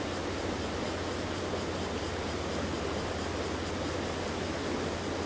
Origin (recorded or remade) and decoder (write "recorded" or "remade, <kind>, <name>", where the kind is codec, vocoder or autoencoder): recorded